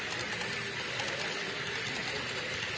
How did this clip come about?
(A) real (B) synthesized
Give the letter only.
A